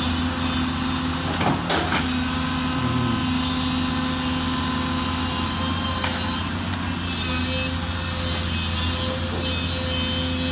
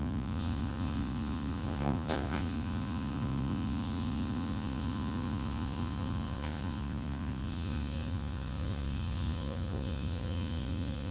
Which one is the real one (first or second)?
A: first